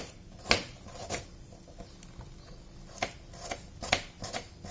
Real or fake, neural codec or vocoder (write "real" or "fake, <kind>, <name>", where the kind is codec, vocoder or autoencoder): real